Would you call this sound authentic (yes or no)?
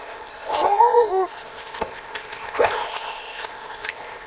no